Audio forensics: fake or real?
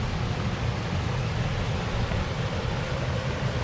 real